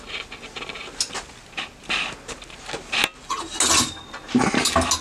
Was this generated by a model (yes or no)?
no